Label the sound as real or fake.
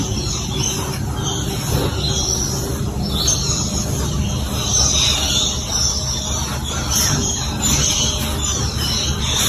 real